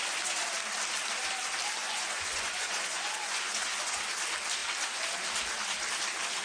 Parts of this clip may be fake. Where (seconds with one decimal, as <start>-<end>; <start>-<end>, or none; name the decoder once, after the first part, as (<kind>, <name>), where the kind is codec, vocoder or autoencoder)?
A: 1.8-4.1 (vocoder, Vocos)